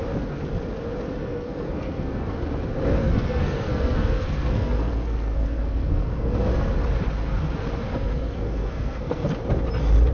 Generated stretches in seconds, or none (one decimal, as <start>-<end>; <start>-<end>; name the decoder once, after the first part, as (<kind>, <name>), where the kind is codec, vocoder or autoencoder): 1.2-2.4 (codec, SNAC); 3.0-6.7; 7.9-9.3